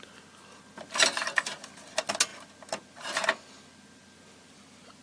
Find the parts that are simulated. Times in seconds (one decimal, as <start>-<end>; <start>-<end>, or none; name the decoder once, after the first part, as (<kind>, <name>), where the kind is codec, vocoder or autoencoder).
none